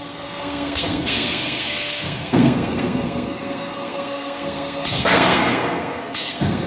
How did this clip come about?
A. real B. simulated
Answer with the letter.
B